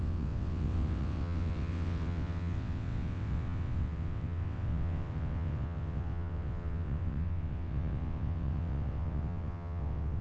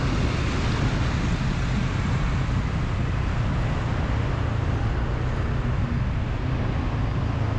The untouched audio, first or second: second